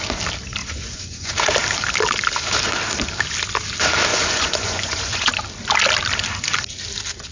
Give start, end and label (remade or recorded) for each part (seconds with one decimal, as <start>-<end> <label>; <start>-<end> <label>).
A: 0.0-0.6 recorded; 0.6-1.3 remade; 1.3-4.1 recorded; 4.1-5.3 remade; 5.3-7.3 recorded